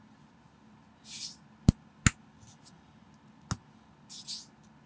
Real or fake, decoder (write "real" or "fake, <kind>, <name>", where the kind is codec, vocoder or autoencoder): real